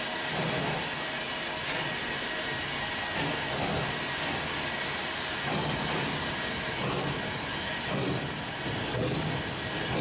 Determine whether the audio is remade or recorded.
recorded